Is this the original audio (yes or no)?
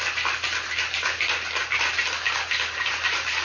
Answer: yes